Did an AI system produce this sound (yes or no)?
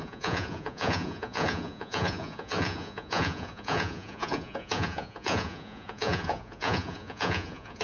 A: yes